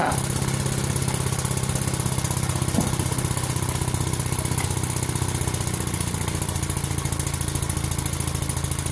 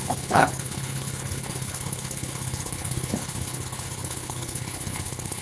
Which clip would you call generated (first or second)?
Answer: second